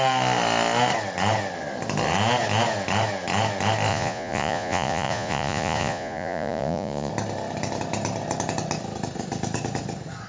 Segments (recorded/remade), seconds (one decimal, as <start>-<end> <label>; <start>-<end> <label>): 0.0-3.9 recorded; 3.9-7.1 remade; 7.1-10.3 recorded